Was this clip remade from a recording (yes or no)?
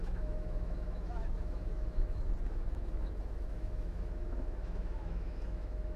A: yes